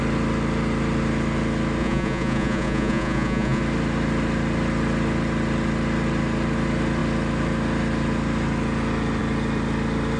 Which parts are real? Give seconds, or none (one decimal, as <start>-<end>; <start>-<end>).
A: 0.0-1.8; 3.6-10.2